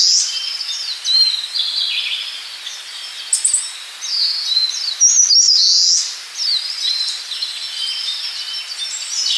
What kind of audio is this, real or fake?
real